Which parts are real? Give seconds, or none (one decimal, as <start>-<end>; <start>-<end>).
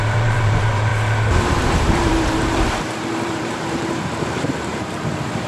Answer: 0.9-1.4